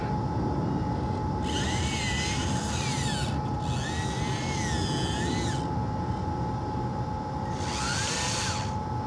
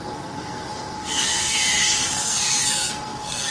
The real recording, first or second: first